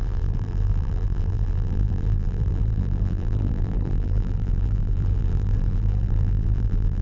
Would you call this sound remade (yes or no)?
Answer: yes